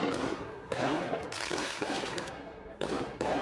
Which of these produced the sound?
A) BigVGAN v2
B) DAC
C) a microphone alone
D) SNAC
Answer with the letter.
D